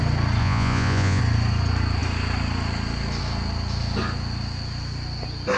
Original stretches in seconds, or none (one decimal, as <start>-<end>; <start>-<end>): 0.0-0.4; 1.2-5.6